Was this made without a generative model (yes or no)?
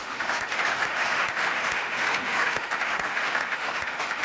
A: no